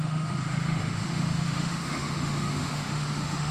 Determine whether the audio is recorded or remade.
remade